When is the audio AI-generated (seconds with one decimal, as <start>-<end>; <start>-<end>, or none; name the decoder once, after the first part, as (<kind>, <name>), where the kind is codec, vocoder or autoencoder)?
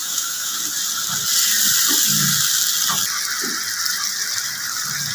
0.0-0.6 (autoencoder, DAC-VAE)